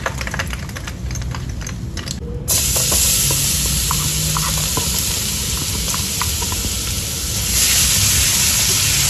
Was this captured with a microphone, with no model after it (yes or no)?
yes